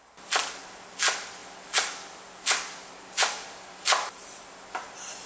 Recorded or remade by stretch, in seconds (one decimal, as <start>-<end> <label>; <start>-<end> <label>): 0.0-5.3 recorded

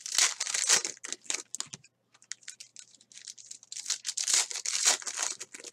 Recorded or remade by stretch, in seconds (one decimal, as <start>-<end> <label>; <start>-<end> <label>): 0.0-5.7 recorded